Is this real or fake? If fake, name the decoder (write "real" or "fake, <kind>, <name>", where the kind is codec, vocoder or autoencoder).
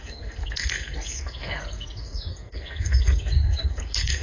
fake, codec, SNAC